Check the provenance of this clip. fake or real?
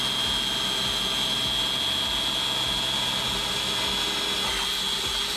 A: real